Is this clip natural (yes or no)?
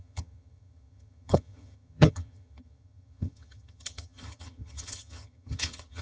no